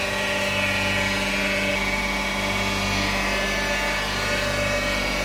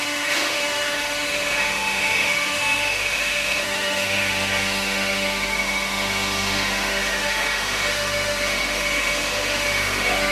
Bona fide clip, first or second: first